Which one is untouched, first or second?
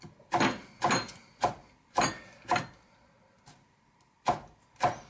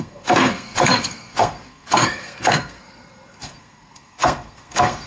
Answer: first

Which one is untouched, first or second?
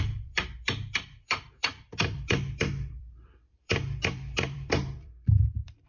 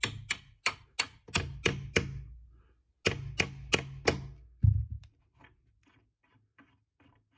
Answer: second